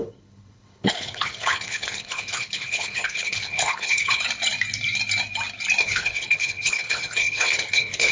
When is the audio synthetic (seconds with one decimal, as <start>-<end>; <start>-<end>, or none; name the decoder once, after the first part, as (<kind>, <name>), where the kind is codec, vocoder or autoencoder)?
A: 0.0-4.2 (codec, HILCodec); 5.8-8.1